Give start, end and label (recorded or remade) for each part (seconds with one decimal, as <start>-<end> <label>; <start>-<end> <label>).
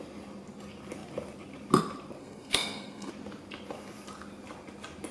0.0-2.2 recorded; 2.2-3.1 remade; 3.1-5.1 recorded